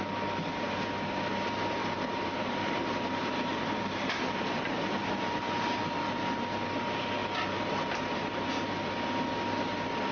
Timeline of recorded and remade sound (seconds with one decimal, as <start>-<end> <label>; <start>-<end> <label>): 0.0-1.8 recorded; 1.8-6.3 remade; 6.3-7.2 recorded; 7.2-8.2 remade; 8.2-10.1 recorded